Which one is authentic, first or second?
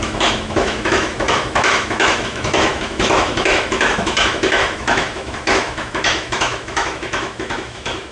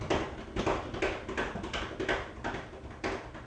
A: second